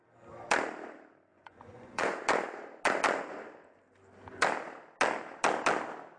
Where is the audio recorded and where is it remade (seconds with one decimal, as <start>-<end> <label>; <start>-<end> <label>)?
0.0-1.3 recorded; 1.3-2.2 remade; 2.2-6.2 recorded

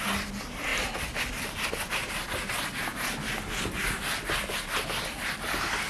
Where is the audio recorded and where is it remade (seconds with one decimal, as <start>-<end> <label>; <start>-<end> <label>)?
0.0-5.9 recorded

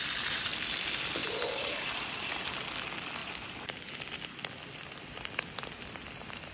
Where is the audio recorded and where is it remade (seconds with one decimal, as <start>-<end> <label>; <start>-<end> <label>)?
0.0-1.2 recorded; 1.2-2.4 remade; 2.4-3.2 recorded; 3.2-3.9 remade; 3.9-6.5 recorded